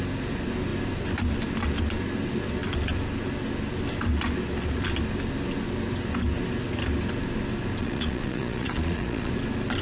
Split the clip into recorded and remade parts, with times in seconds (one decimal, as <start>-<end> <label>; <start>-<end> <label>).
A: 0.0-7.8 recorded; 7.8-9.3 remade; 9.3-9.8 recorded